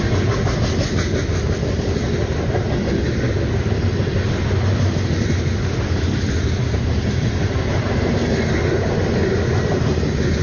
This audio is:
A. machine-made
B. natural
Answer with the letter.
B